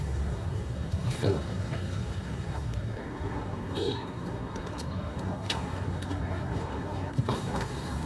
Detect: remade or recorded remade